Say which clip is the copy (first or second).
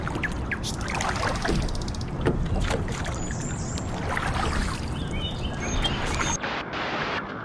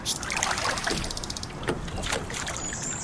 second